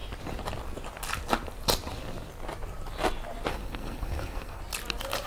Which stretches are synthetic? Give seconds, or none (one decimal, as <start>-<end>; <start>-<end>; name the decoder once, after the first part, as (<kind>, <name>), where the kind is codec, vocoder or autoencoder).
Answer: 3.5-4.6 (codec, SNAC)